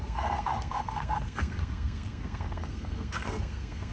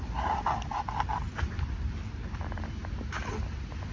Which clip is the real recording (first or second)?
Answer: second